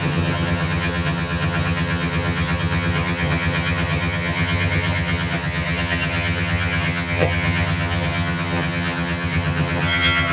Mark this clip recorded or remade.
remade